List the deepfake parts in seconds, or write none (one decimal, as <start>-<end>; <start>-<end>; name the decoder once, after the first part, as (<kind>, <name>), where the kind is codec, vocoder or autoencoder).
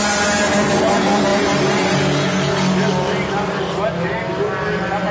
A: none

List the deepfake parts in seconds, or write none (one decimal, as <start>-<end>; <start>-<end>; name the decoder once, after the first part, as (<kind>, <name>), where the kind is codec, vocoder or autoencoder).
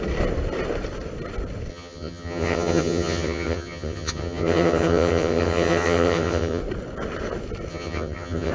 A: 1.7-6.6 (vocoder, HiFi-GAN); 7.7-8.5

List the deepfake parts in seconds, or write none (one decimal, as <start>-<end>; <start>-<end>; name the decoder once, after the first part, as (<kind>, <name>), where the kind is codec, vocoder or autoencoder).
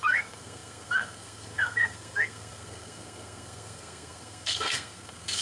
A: 0.0-5.4 (codec, SNAC)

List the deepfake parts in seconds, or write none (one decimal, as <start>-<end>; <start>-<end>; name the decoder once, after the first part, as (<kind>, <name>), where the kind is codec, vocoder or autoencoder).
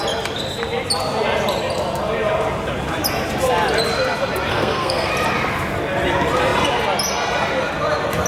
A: 4.5-5.1 (codec, SNAC)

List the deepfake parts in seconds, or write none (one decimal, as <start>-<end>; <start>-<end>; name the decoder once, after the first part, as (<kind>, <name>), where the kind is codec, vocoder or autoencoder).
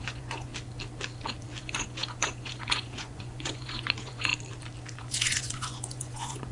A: 0.0-0.5 (vocoder, Vocos); 1.6-4.3; 5.0-6.5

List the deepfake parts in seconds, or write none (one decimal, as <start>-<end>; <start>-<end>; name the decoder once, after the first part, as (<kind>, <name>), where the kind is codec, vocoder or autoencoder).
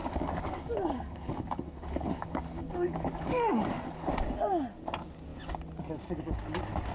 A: 0.0-4.1 (codec, DAC)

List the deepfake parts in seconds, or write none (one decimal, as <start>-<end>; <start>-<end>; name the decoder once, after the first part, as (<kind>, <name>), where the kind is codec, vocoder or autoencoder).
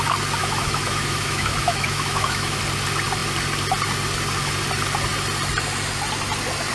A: 0.4-2.6 (autoencoder, DAC-VAE)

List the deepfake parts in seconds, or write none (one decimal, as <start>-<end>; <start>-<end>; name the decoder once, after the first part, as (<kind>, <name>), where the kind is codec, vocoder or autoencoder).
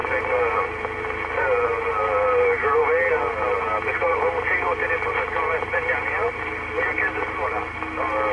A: none